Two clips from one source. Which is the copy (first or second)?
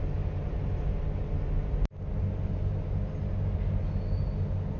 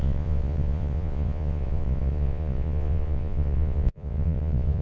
second